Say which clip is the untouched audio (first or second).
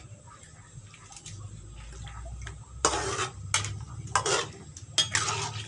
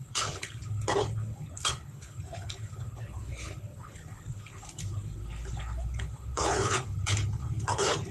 first